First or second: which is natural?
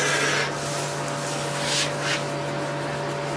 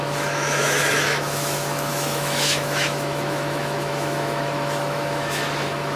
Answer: first